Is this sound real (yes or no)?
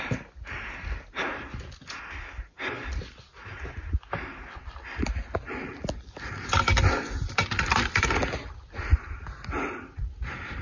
yes